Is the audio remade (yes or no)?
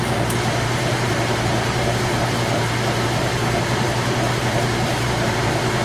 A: yes